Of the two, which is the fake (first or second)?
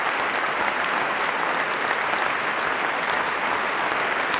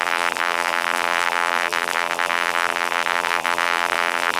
second